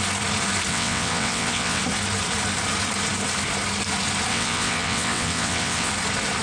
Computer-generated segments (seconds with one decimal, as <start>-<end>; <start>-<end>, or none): 0.7-1.8; 4.3-5.9